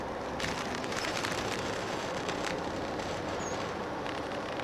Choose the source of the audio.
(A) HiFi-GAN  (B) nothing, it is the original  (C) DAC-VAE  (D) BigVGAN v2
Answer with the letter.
D